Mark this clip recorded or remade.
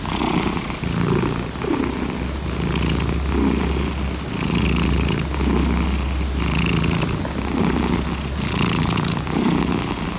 recorded